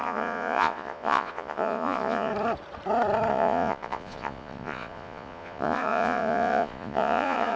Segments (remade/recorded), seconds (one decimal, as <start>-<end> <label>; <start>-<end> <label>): 0.0-2.3 remade; 2.3-3.3 recorded; 3.3-7.6 remade